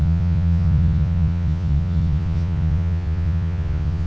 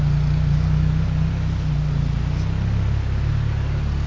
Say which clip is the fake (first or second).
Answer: first